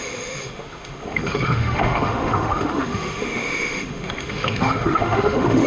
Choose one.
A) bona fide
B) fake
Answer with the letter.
B